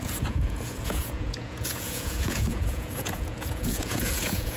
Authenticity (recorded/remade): remade